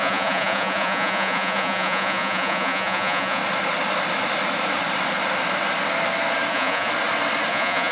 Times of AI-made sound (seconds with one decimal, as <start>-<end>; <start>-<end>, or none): 0.0-3.4; 6.5-6.9; 7.5-7.9